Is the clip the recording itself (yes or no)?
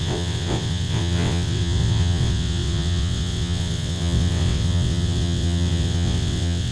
no